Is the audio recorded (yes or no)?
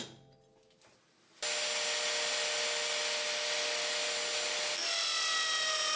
yes